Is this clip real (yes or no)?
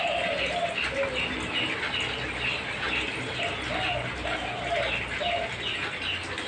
yes